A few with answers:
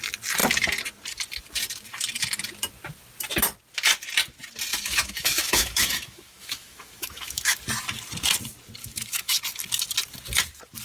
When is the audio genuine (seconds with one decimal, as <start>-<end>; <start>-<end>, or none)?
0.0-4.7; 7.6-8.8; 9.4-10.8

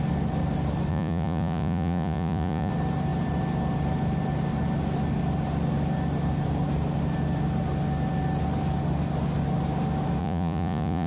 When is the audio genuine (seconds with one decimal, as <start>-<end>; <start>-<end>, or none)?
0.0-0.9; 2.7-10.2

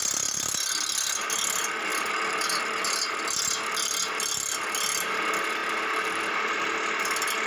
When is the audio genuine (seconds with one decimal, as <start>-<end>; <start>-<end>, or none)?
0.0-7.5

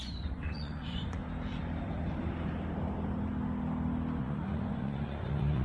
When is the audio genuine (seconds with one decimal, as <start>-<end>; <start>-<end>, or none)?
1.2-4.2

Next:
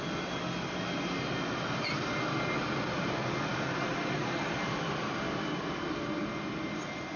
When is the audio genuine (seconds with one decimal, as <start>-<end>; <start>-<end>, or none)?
0.0-7.2

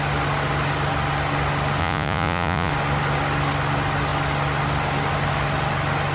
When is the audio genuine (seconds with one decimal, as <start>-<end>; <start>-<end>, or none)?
0.0-1.8; 2.7-6.1

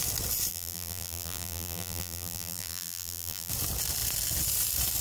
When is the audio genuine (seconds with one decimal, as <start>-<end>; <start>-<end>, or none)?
0.0-0.5; 3.5-5.0